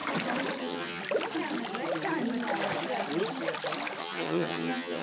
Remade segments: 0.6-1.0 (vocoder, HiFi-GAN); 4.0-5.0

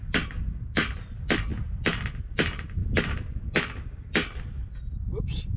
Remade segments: none

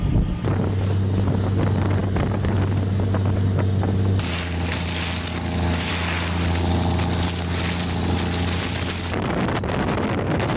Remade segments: none